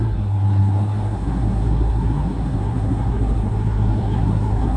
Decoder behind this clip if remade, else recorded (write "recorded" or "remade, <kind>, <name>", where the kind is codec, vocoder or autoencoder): remade, codec, SNAC